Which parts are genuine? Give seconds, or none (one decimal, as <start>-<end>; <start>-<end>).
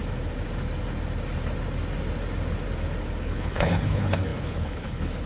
0.0-3.2